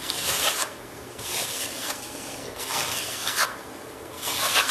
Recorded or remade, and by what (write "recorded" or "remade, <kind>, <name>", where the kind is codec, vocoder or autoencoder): remade, codec, SNAC